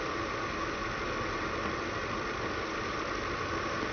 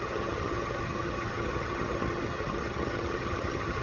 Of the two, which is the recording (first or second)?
first